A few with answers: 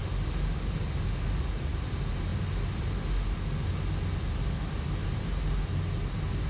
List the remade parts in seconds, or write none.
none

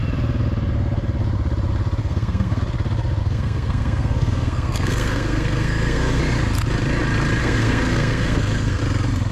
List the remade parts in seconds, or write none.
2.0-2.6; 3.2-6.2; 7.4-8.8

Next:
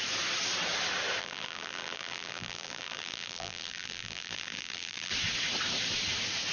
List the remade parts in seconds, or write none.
1.2-5.1

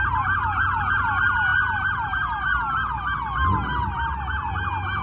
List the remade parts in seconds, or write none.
none

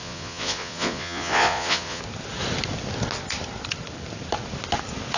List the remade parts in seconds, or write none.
0.0-2.0